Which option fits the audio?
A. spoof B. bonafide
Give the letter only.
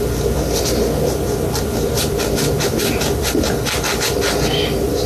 B